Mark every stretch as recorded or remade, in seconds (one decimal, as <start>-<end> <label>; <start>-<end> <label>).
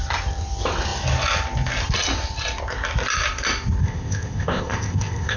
0.0-3.8 recorded; 3.8-5.4 remade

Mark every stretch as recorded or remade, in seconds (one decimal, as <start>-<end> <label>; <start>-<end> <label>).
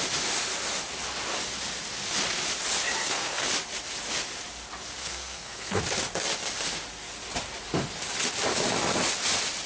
0.0-3.0 recorded; 3.0-3.5 remade; 3.5-5.0 recorded; 5.0-5.8 remade; 5.8-9.7 recorded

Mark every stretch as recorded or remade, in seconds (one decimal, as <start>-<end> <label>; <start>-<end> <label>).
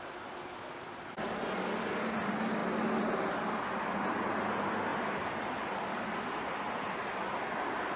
0.0-8.0 recorded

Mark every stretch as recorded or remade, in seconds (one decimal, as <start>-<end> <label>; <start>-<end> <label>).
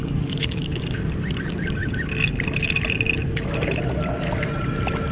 0.0-1.2 remade; 1.2-5.1 recorded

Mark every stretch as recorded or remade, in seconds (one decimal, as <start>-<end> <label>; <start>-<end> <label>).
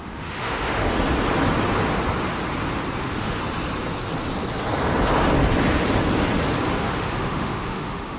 0.0-0.8 remade; 0.8-3.0 recorded; 3.0-3.4 remade; 3.4-6.7 recorded; 6.7-8.2 remade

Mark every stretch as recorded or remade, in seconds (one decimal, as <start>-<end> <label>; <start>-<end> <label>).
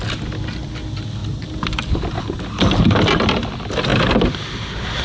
0.0-5.0 recorded